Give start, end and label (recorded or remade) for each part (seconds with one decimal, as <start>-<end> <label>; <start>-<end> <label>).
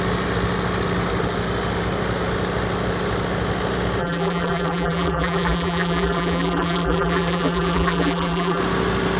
0.0-4.0 recorded; 4.0-8.6 remade; 8.6-9.2 recorded